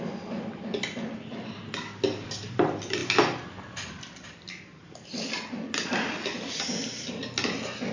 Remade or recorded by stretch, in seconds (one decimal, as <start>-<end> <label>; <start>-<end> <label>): 0.0-7.9 recorded